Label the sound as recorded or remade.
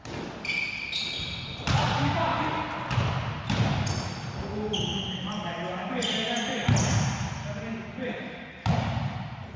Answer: recorded